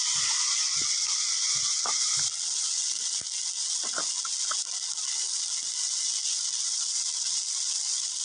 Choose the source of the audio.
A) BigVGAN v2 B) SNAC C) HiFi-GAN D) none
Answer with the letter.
D